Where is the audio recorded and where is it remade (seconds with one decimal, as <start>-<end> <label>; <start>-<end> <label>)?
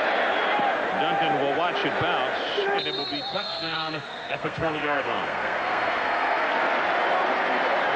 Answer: 0.0-3.3 recorded; 3.3-6.5 remade; 6.5-8.0 recorded